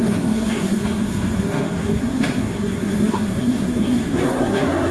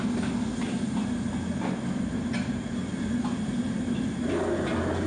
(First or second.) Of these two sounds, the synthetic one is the first